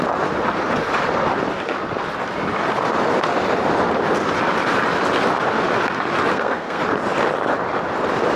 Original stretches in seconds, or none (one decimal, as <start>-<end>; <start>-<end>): 0.0-6.3; 6.8-8.4